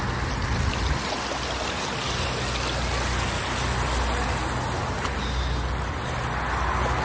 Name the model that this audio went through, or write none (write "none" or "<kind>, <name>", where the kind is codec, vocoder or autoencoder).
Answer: none